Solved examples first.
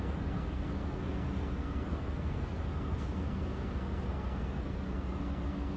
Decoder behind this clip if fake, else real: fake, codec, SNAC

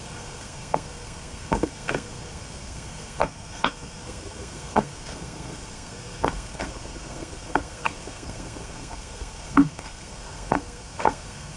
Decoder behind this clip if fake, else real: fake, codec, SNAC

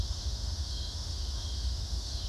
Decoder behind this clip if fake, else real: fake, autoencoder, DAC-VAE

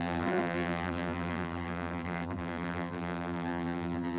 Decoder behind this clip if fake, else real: fake, vocoder, BigVGAN v2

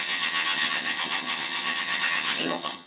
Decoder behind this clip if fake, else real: fake, vocoder, HiFi-GAN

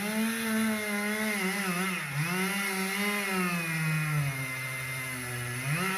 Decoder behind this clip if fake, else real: real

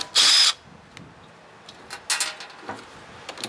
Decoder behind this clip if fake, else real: real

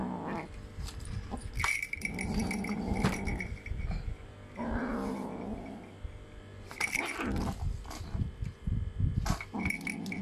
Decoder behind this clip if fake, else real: real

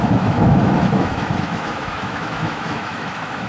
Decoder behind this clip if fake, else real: fake, autoencoder, DAC-VAE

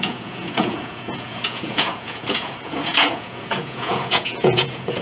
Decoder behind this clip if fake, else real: fake, vocoder, Vocos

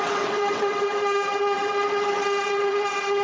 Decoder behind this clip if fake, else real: fake, vocoder, WaveNeXt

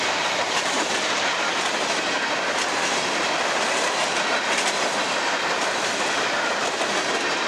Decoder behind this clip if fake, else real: real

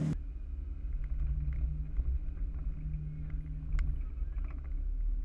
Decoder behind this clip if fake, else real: real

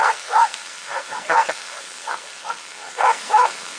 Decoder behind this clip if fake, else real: fake, codec, SNAC